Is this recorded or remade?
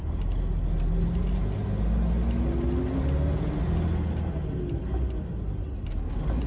recorded